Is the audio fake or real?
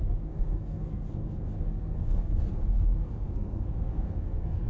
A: fake